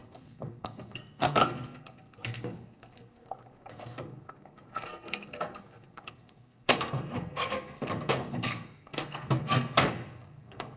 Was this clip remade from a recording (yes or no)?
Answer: yes